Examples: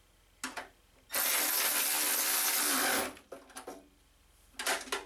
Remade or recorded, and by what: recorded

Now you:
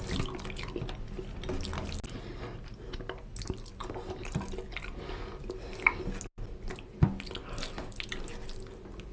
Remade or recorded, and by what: recorded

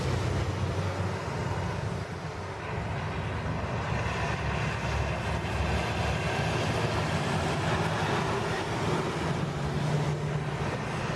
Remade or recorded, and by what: recorded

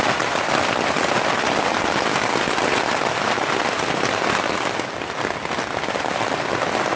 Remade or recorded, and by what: recorded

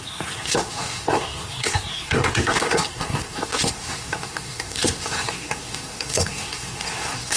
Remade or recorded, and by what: remade, codec, SNAC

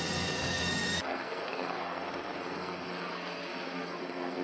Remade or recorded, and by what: remade, codec, SNAC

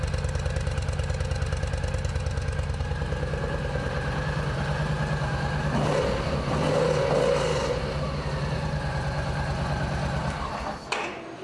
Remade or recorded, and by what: recorded